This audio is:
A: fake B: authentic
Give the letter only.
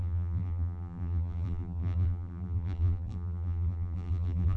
A